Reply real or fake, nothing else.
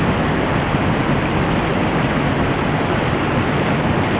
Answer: real